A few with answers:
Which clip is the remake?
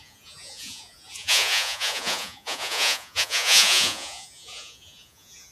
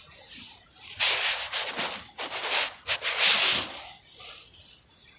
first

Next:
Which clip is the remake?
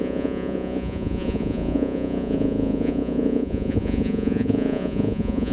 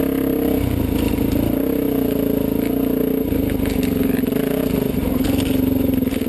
first